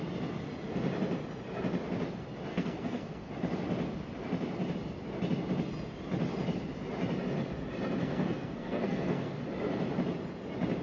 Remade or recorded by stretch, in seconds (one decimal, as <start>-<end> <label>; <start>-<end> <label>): 0.0-2.5 recorded; 2.5-3.3 remade; 3.3-8.0 recorded; 8.0-9.4 remade; 9.4-10.8 recorded